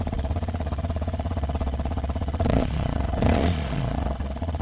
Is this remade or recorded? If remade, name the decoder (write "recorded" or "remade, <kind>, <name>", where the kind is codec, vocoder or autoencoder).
remade, vocoder, Vocos